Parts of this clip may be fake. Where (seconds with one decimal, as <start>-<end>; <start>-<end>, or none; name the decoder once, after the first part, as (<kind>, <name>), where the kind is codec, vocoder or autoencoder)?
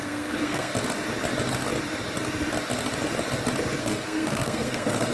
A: 0.0-0.7 (codec, SNAC); 3.8-5.1